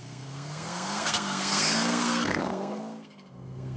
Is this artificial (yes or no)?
yes